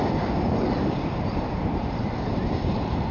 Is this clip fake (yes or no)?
yes